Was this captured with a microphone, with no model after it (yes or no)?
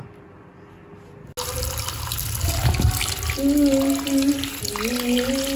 yes